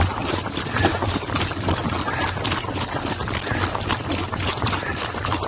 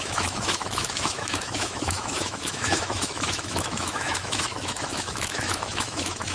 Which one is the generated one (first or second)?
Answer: second